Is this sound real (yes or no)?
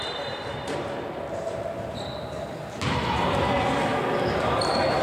yes